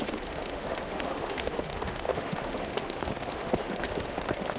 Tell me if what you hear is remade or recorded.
remade